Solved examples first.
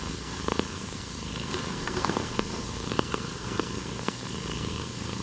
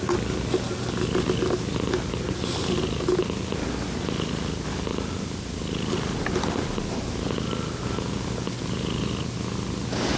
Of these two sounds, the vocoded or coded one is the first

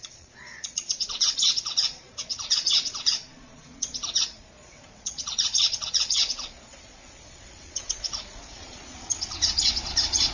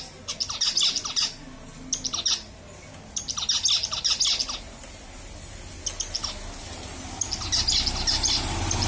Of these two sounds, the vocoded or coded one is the first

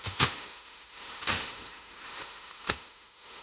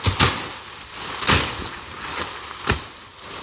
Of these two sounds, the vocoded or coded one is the first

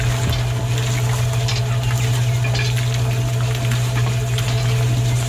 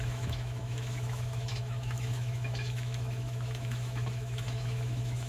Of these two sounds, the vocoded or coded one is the second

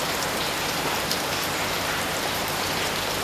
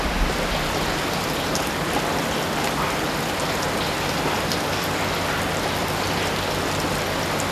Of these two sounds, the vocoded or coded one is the first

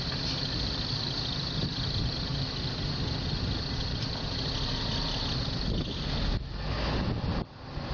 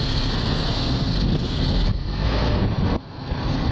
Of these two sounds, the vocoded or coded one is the second